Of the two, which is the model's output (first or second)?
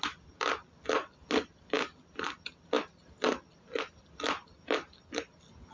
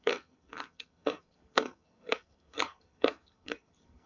second